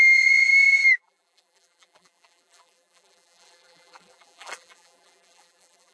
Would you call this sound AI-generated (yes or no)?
yes